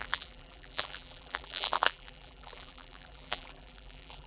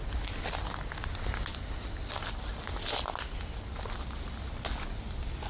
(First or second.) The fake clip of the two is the first